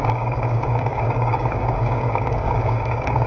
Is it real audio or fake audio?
fake